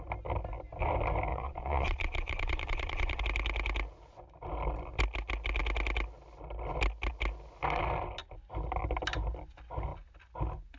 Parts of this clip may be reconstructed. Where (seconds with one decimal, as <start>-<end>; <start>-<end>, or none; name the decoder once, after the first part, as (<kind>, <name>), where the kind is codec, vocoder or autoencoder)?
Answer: 1.3-3.2 (vocoder, Vocos)